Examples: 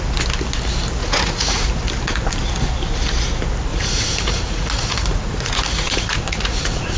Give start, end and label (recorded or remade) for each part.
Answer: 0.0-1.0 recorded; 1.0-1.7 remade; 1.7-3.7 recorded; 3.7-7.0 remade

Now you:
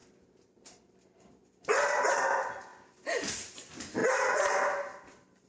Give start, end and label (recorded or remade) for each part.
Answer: 0.0-2.7 remade; 2.7-3.5 recorded; 3.5-4.0 remade; 4.0-4.7 recorded; 4.7-5.5 remade

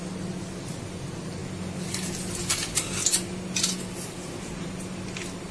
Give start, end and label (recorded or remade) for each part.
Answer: 0.0-5.5 recorded

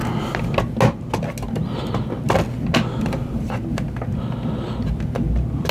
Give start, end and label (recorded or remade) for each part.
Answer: 0.0-5.7 recorded